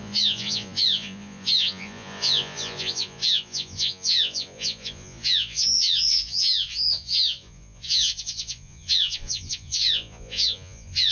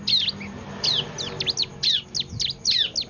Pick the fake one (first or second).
first